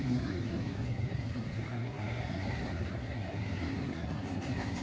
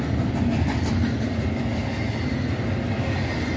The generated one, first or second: first